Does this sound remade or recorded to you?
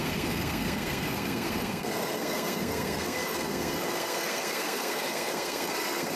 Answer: remade